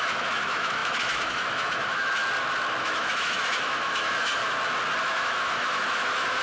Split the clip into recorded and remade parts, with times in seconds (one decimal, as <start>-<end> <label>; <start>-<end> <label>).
0.0-2.2 remade; 2.2-2.8 recorded; 2.8-4.4 remade; 4.4-5.0 recorded; 5.0-6.4 remade